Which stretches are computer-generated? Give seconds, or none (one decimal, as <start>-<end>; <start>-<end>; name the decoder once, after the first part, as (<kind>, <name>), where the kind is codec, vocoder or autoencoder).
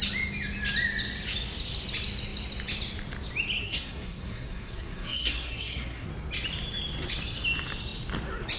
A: 3.6-6.1 (codec, SNAC)